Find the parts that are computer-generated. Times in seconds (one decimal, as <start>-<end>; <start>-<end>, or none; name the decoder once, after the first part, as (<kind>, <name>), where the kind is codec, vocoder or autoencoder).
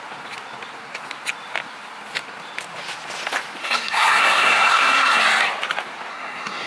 3.6-5.2 (codec, SNAC); 6.1-6.7